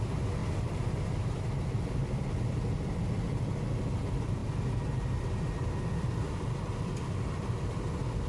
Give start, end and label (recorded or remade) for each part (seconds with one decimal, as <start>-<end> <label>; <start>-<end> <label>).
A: 0.0-0.4 recorded; 0.4-3.0 remade; 3.0-8.3 recorded